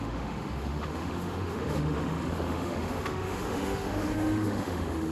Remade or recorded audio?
remade